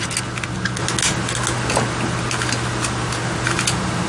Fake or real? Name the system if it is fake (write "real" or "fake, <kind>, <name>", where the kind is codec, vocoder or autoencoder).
real